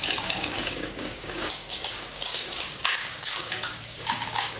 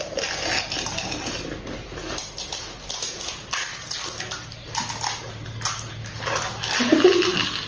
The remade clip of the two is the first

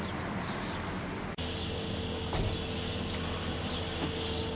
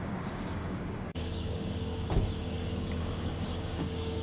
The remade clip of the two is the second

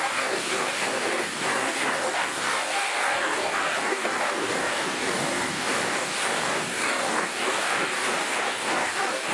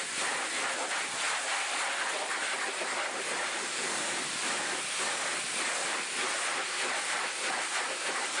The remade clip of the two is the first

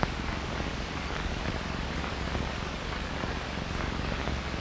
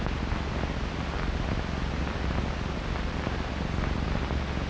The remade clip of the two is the first